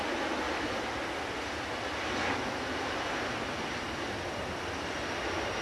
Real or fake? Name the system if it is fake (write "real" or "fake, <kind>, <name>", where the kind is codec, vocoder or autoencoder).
real